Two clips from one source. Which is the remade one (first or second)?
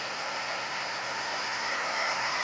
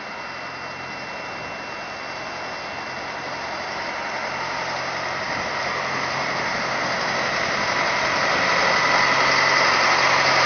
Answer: first